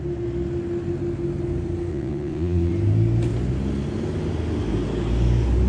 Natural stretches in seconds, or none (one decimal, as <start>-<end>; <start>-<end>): 0.0-1.9; 2.7-5.7